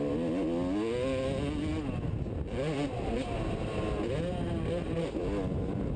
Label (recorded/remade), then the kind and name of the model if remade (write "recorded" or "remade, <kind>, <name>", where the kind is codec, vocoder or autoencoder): recorded